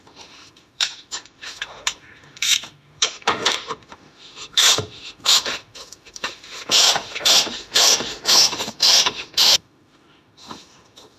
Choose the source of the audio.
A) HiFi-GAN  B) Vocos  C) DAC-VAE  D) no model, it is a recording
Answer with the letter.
C